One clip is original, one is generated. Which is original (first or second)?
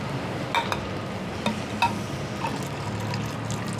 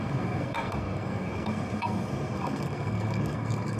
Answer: first